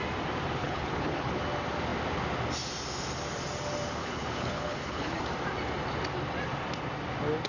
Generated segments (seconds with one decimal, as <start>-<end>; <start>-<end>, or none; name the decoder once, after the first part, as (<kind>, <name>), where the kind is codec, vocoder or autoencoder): 0.6-1.4 (codec, HILCodec); 4.0-5.2